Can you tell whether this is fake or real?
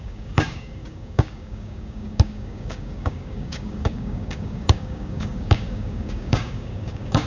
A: fake